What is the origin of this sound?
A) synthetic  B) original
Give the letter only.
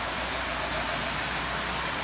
A